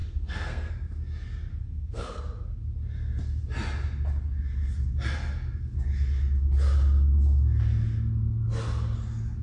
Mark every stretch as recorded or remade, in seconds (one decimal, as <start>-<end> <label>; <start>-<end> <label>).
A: 0.0-0.7 remade; 0.7-1.5 recorded; 1.5-2.2 remade; 2.2-9.4 recorded